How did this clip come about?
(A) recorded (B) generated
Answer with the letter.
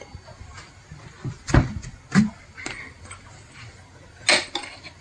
A